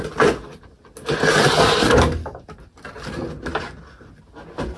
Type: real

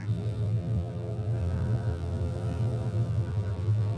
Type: fake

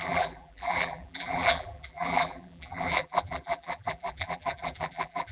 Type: fake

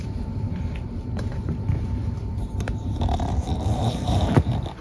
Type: fake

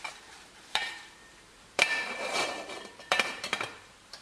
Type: fake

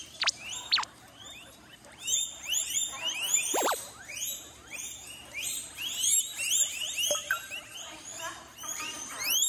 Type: fake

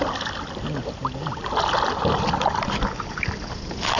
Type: real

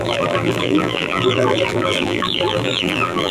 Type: fake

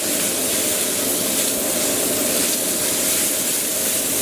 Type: real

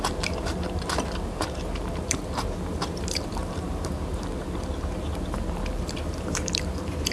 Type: fake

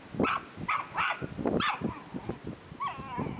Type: real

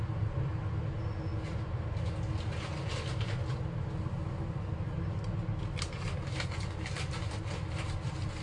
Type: real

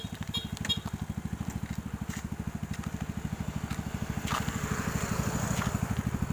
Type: real